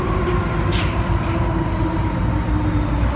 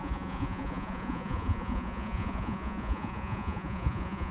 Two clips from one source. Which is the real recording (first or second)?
first